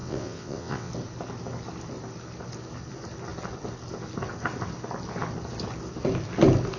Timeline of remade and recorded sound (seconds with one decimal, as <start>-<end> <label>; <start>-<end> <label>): 0.0-0.9 remade; 0.9-6.8 recorded